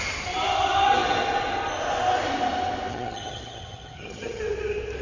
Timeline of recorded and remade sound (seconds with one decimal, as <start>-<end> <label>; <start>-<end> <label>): 0.0-2.9 recorded; 2.9-4.4 remade; 4.4-5.0 recorded